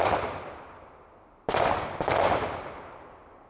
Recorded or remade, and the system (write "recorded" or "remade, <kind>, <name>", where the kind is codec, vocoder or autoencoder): recorded